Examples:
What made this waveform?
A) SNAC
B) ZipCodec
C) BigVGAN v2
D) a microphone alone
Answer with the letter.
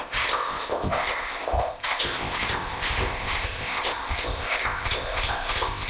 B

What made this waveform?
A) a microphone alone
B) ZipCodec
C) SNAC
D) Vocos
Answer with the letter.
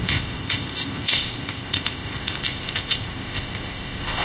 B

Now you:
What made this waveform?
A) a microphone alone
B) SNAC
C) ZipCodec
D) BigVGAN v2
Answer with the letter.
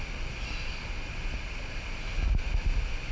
A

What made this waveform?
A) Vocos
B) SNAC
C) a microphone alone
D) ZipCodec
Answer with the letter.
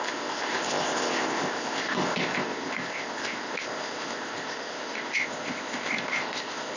D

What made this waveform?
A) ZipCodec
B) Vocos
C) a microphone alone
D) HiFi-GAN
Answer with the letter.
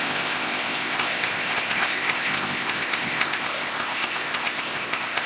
A